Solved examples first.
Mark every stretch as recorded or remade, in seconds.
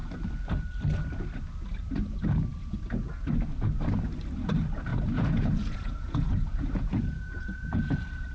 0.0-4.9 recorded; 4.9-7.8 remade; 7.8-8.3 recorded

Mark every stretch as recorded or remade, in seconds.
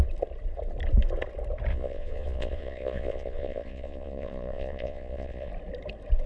0.0-1.7 recorded; 1.7-5.5 remade; 5.5-6.3 recorded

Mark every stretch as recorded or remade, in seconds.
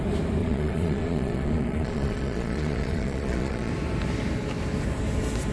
0.0-0.4 recorded; 0.4-3.7 remade; 3.7-5.5 recorded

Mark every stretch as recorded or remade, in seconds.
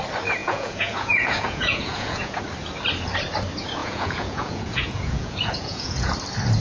0.0-0.4 recorded; 0.4-2.4 remade; 2.4-3.8 recorded; 3.8-6.1 remade; 6.1-6.6 recorded